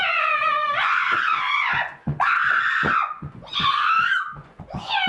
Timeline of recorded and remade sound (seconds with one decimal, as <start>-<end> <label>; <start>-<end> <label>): 0.0-5.1 remade